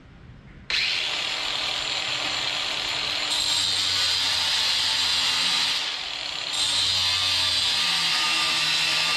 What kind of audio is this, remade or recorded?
recorded